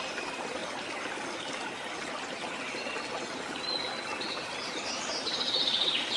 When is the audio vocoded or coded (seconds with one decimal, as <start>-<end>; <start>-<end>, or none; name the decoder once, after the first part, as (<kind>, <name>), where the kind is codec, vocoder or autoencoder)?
none